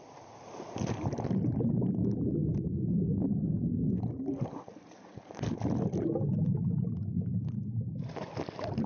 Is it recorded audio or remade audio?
recorded